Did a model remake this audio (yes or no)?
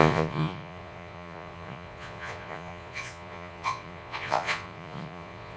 yes